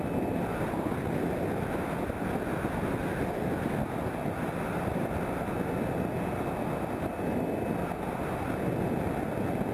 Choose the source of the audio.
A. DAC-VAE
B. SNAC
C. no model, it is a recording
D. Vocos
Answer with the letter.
C